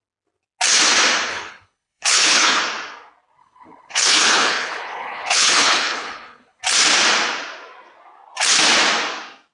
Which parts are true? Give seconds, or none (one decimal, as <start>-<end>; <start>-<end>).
0.0-1.3; 2.6-3.4; 6.6-9.5